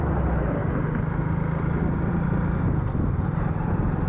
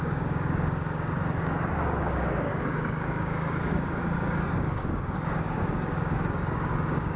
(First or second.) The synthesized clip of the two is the second